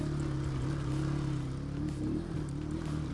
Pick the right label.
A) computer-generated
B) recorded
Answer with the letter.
B